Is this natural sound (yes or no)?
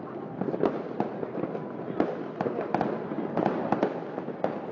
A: yes